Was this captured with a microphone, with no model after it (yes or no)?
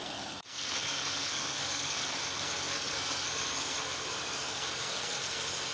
no